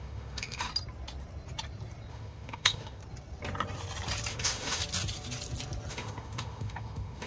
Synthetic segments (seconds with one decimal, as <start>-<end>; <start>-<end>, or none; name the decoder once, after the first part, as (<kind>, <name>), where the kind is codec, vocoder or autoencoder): 0.0-0.7 (autoencoder, DAC-VAE); 2.1-3.0; 4.3-4.8; 5.9-7.3